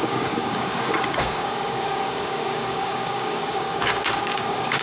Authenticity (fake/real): fake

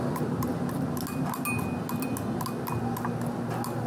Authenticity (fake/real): real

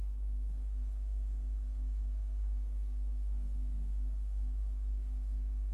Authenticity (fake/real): fake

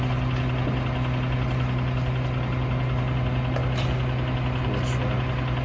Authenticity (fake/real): real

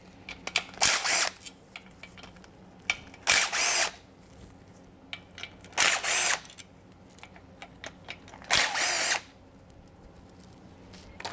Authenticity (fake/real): real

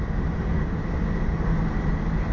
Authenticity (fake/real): real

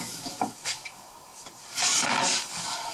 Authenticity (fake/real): fake